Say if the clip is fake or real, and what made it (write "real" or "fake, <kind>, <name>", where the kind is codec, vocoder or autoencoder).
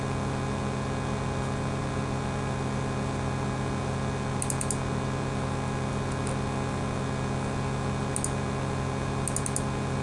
real